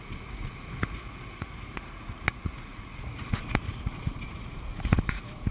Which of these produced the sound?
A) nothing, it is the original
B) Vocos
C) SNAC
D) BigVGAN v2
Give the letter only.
B